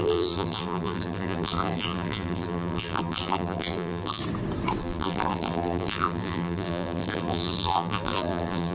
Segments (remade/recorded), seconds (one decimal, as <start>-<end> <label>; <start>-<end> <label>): 0.0-4.2 remade; 4.2-4.8 recorded; 4.8-8.7 remade